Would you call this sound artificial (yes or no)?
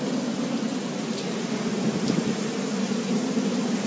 no